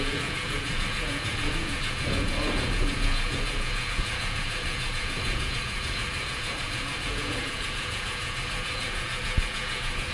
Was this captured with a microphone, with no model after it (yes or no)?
no